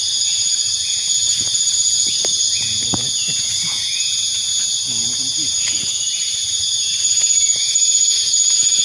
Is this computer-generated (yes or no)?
yes